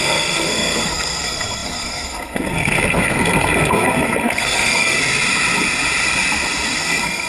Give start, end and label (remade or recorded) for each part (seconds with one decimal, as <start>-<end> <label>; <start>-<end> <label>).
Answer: 0.0-5.0 remade; 5.0-6.8 recorded; 6.8-7.3 remade